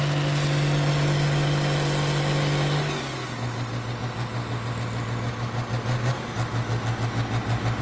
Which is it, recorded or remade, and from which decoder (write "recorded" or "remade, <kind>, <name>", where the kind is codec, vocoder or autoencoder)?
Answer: recorded